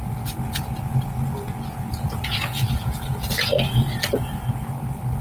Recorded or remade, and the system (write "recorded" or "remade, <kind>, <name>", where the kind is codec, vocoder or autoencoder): recorded